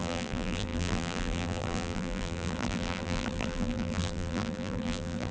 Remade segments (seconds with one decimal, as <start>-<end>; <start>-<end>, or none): 0.0-5.3